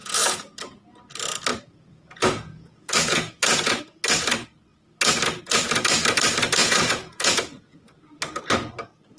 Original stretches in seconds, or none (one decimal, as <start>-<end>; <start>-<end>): 0.8-1.5; 3.8-6.6; 8.2-9.2